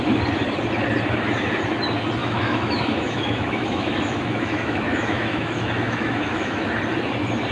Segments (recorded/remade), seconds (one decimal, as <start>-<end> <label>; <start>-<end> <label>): 0.0-2.2 recorded; 2.2-6.7 remade; 6.7-7.5 recorded